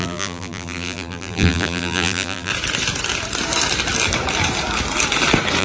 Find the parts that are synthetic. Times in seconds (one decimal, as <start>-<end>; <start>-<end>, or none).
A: 0.0-2.5